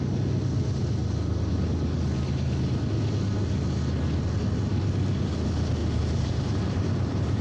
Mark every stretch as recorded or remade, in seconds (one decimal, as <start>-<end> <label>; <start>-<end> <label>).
0.0-5.8 recorded; 5.8-7.4 remade